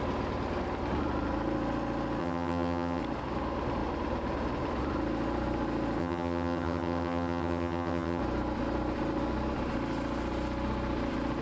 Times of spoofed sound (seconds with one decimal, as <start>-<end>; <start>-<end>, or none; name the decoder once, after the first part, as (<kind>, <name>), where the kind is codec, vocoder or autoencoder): 2.2-3.0 (vocoder, HiFi-GAN); 6.0-8.2

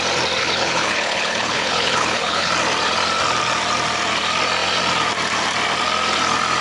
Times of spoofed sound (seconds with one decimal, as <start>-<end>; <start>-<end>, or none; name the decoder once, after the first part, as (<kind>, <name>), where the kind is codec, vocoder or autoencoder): 0.4-2.5 (codec, HILCodec)

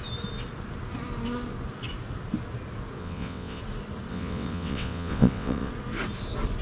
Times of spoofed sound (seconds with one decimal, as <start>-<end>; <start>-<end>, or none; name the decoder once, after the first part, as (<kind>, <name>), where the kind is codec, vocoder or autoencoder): 3.0-3.6 (vocoder, WaveNeXt); 4.1-5.7

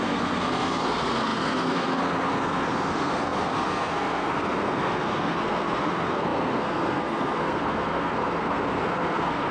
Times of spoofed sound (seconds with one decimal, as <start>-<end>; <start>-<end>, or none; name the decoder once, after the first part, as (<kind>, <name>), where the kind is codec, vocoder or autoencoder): 0.0-9.5 (codec, SNAC)

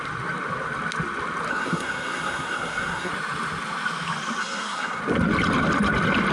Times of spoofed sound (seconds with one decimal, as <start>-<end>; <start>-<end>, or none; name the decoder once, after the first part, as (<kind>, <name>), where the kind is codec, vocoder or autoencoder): 1.5-3.1 (codec, SNAC); 4.4-5.0

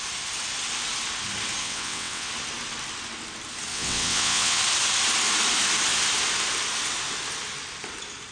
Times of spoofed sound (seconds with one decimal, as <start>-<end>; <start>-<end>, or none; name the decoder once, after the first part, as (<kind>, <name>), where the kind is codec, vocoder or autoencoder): 1.6-2.3 (vocoder, WaveNeXt); 3.7-4.6

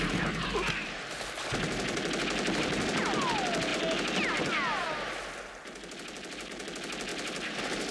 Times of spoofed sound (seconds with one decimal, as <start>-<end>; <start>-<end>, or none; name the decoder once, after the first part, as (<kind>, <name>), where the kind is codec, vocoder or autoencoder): none